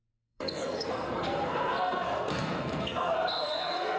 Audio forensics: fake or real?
fake